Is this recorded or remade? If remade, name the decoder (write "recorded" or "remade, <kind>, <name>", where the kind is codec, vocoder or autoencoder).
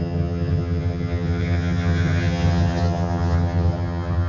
remade, vocoder, HiFi-GAN